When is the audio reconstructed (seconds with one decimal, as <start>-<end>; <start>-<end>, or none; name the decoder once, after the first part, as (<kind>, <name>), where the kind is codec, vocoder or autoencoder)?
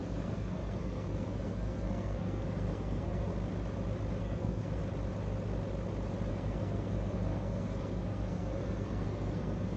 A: 0.0-3.3 (codec, SNAC); 4.2-4.8; 6.3-9.8